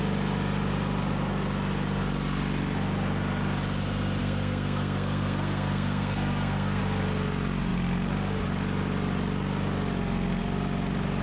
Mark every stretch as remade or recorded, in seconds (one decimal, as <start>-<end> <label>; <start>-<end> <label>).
0.0-4.2 recorded; 4.2-6.8 remade; 6.8-11.2 recorded